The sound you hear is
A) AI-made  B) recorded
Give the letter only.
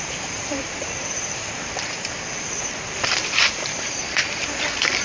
A